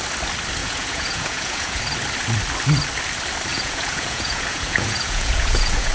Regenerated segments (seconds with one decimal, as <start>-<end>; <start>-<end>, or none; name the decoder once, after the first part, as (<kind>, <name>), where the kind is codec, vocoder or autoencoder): 0.6-1.8 (vocoder, Vocos); 3.5-5.9